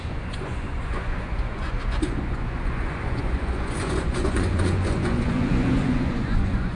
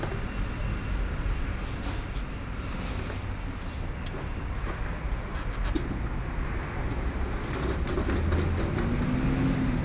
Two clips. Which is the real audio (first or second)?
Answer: second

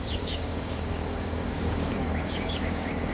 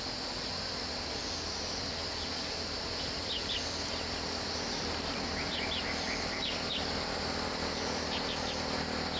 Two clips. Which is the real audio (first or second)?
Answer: second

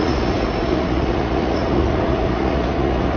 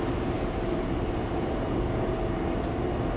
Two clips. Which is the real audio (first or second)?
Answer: second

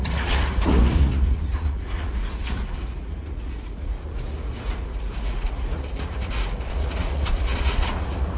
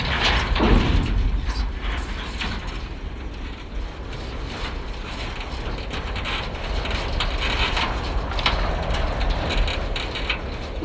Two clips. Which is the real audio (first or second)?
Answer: second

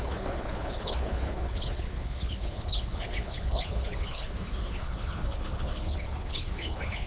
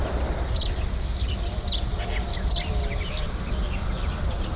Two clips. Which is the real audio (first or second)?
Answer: second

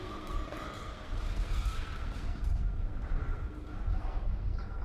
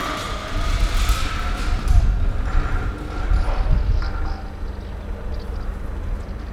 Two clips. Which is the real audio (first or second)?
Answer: second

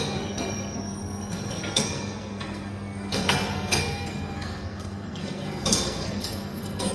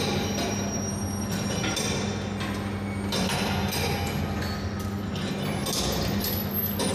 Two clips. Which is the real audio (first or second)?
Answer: second